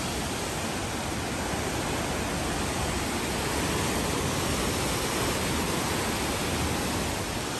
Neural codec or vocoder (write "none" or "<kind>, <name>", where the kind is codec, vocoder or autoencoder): none